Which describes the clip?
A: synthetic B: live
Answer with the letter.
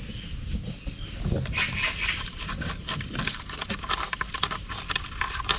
B